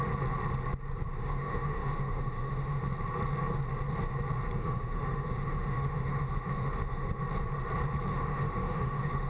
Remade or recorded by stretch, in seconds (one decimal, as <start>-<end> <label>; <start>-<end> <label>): 0.0-1.2 recorded; 1.2-2.8 remade; 2.8-4.6 recorded; 4.6-7.2 remade; 7.2-8.1 recorded; 8.1-9.3 remade